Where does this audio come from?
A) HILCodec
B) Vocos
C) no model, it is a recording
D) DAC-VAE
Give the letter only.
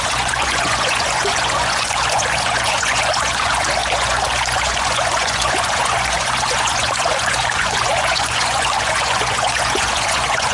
B